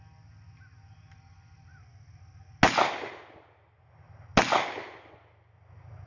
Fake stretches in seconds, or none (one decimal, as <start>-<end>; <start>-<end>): none